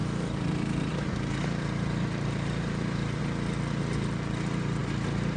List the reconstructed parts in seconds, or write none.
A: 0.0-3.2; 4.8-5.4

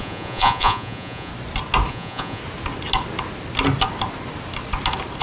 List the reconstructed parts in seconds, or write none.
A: 0.0-1.3; 1.9-2.4

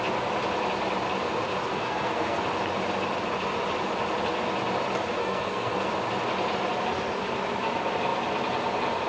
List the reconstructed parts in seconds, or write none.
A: 1.7-2.4; 5.2-5.9

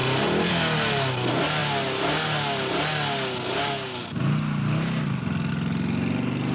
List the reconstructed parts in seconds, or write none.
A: none